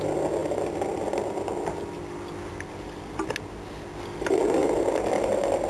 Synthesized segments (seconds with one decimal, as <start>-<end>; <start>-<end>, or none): 0.4-2.5